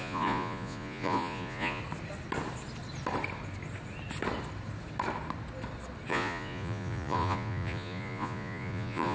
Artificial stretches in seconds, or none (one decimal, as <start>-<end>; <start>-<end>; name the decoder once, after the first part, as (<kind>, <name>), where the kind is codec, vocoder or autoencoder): 0.0-1.8 (vocoder, Vocos); 6.1-9.1